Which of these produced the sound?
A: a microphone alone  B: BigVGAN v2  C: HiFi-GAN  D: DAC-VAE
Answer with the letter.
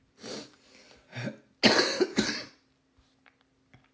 A